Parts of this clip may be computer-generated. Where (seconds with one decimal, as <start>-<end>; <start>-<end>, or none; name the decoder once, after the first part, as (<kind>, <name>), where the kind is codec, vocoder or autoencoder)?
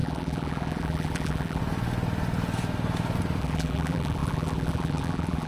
0.0-1.6 (vocoder, BigVGAN v2); 3.4-5.5